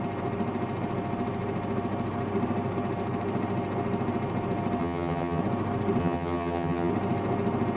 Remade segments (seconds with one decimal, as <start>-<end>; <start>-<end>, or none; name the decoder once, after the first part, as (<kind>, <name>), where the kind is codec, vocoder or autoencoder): 4.8-5.4 (vocoder, HiFi-GAN); 6.0-6.9